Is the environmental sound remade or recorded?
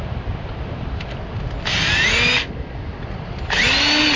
recorded